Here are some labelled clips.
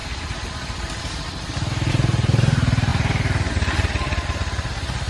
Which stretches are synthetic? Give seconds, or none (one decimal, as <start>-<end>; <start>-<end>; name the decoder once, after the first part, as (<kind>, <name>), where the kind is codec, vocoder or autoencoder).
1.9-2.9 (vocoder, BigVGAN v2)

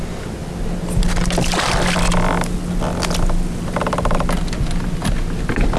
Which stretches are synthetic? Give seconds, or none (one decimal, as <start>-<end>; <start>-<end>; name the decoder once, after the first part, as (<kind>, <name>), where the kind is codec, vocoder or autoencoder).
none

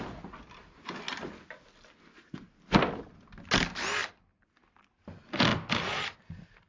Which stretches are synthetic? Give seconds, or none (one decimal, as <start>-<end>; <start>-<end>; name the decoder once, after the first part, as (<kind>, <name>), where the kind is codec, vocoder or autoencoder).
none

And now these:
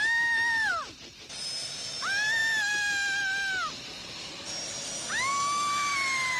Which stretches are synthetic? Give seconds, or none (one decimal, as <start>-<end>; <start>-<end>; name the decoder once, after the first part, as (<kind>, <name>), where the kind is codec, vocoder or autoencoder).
none

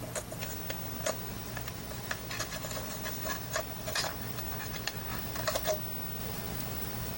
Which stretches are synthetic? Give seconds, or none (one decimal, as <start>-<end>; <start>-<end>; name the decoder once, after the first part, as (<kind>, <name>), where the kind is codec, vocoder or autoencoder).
1.3-2.2 (vocoder, BigVGAN v2); 3.8-4.4; 5.1-5.7; 6.2-7.2

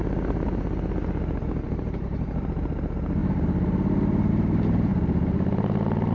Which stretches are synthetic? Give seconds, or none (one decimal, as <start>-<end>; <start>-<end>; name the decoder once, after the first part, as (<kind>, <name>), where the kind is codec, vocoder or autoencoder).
1.8-3.2 (vocoder, BigVGAN v2); 4.3-4.9

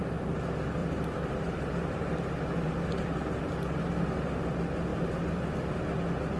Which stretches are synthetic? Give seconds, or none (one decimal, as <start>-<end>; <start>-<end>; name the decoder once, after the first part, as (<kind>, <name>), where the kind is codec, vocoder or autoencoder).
0.8-2.3 (vocoder, BigVGAN v2); 4.9-5.8

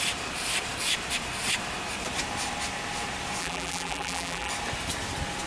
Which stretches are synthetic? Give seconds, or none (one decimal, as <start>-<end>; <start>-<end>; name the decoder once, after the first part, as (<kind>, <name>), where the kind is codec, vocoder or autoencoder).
3.4-4.5 (vocoder, BigVGAN v2)